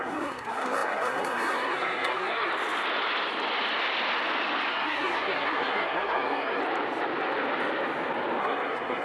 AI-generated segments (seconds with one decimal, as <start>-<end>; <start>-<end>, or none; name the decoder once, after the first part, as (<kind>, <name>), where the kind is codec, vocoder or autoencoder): 0.0-2.5 (codec, SNAC); 4.7-6.6; 8.4-9.0